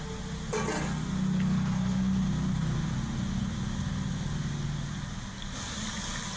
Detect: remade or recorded recorded